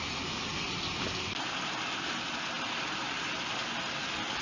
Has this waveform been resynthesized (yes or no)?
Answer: no